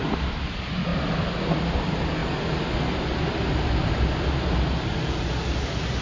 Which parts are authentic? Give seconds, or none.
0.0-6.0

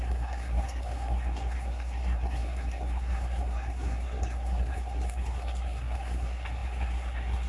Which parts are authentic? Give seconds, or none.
none

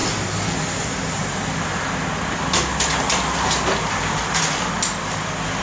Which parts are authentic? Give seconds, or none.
0.0-5.6

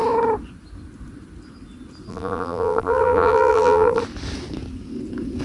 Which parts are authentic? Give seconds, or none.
0.0-2.1; 4.0-5.4

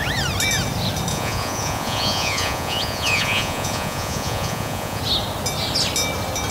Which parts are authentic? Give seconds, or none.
0.0-1.1; 5.0-6.5

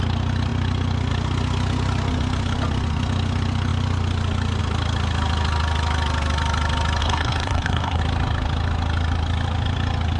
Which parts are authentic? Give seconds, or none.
0.0-7.0; 8.0-10.2